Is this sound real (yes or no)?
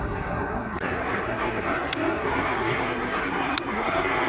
no